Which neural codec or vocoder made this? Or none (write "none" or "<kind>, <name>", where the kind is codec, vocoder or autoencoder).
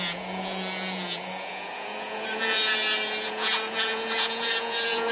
vocoder, Vocos